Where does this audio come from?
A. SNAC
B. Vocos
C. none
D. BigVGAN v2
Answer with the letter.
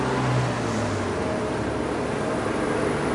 C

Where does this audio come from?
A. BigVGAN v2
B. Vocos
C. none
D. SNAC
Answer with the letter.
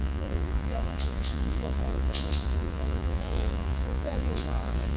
B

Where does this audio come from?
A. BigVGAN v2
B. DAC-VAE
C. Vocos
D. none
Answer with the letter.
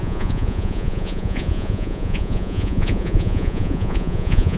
C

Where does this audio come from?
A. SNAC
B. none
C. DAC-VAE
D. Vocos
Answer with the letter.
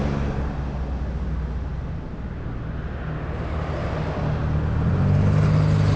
B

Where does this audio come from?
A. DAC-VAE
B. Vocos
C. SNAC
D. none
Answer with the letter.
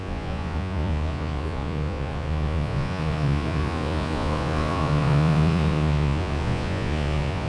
B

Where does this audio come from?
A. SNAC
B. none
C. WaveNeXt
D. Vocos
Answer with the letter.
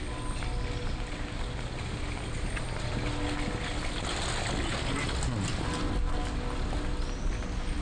B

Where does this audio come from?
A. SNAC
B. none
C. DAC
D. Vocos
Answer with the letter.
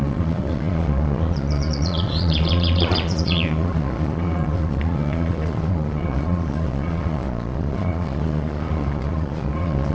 D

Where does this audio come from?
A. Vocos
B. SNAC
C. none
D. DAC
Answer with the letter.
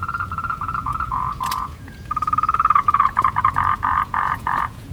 A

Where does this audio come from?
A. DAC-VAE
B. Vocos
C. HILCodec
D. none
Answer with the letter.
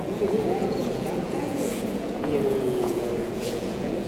B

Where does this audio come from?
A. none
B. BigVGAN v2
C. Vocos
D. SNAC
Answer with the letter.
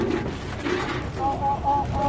A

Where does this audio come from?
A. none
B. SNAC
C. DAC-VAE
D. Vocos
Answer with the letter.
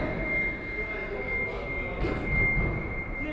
A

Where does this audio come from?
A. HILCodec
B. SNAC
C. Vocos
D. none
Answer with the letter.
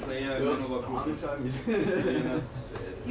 D